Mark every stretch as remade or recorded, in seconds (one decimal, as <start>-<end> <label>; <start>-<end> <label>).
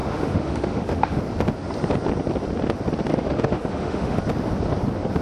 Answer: 0.0-1.2 remade; 1.2-3.1 recorded; 3.1-4.2 remade; 4.2-5.2 recorded